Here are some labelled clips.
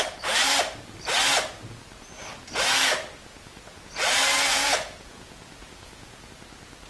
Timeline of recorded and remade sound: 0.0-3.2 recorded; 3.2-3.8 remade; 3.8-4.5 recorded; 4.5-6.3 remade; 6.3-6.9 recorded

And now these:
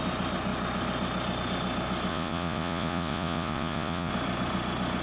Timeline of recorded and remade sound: 0.0-2.1 recorded; 2.1-4.1 remade; 4.1-5.0 recorded

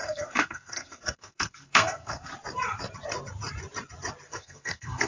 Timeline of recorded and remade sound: 0.0-2.3 remade; 2.3-4.3 recorded; 4.3-5.1 remade

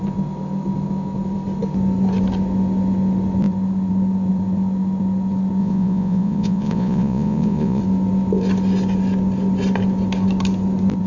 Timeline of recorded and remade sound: 0.0-5.6 recorded; 5.6-7.8 remade; 7.8-11.1 recorded